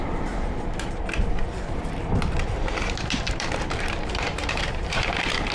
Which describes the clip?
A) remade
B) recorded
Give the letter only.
A